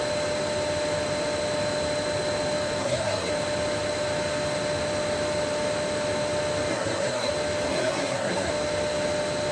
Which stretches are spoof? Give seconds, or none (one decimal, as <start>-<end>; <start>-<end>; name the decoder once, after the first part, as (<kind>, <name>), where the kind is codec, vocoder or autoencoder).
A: 2.8-3.3 (codec, SNAC); 6.7-7.3; 7.7-8.5